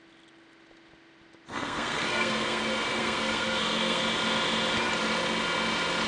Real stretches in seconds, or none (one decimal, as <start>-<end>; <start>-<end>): 0.0-1.5; 2.6-3.0; 4.0-6.1